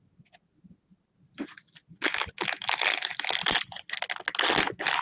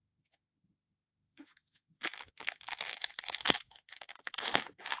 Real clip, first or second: first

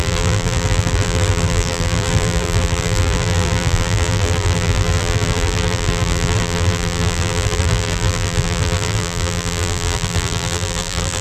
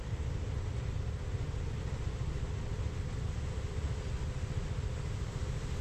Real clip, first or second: second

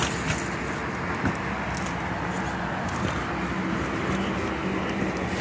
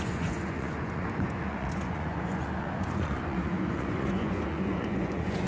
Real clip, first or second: first